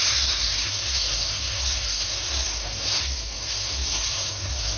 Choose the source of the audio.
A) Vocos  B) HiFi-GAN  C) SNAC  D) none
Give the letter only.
C